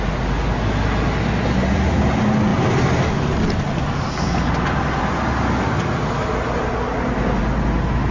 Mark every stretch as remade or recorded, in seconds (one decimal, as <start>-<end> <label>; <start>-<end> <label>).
0.0-8.1 recorded

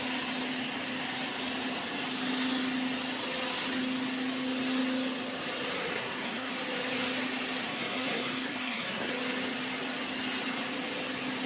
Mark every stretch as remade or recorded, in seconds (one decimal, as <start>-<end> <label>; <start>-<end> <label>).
0.0-5.8 recorded; 5.8-6.5 remade; 6.5-7.7 recorded; 7.7-9.1 remade; 9.1-11.5 recorded

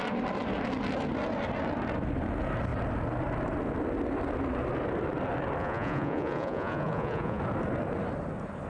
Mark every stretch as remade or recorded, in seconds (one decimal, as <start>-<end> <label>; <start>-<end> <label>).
0.0-5.6 recorded; 5.6-7.4 remade; 7.4-8.7 recorded

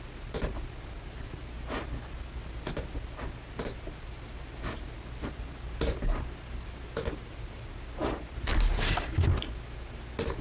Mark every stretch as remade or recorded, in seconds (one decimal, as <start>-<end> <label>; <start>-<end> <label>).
0.0-10.4 recorded

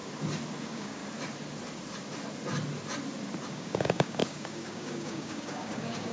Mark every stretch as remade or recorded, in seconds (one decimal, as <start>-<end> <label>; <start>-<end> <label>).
0.0-0.6 recorded; 0.6-1.0 remade; 1.0-3.5 recorded; 3.5-6.1 remade

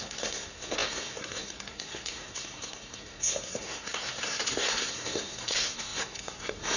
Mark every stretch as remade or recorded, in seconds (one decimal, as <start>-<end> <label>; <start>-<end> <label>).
0.0-6.8 remade